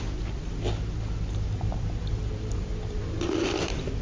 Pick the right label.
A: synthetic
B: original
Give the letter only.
A